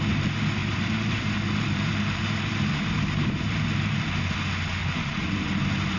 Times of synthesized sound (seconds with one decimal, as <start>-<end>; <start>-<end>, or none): 0.6-4.2; 4.8-5.5